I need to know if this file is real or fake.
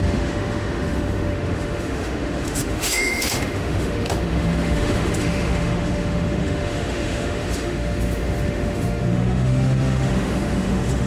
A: fake